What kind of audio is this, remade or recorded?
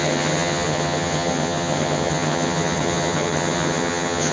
remade